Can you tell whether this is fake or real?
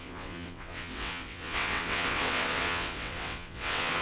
fake